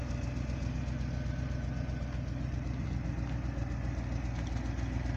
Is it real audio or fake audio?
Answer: real